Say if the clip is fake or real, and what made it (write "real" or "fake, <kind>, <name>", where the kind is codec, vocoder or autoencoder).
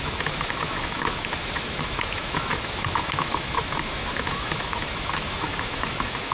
fake, autoencoder, DAC-VAE